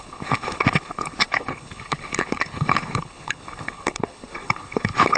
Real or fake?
fake